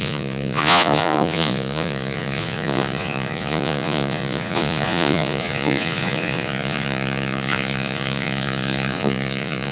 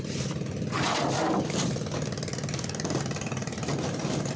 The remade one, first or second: first